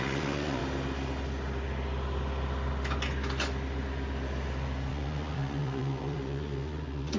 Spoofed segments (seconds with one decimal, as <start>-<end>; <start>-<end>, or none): 0.0-0.6; 4.9-7.2